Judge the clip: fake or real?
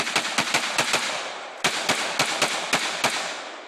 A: real